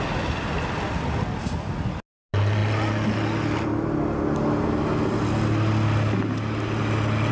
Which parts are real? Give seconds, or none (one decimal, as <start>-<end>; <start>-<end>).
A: 0.0-7.3